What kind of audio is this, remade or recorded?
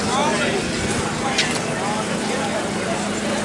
recorded